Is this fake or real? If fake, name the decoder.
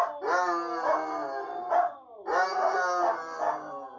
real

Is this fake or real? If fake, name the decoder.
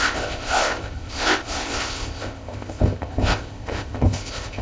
fake, codec, ZipCodec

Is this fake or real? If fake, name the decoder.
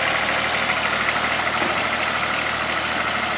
real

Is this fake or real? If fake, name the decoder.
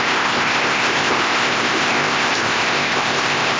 fake, codec, ZipCodec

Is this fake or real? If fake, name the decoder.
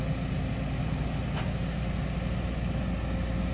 real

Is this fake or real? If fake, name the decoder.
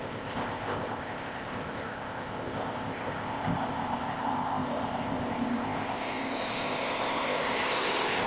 fake, codec, ZipCodec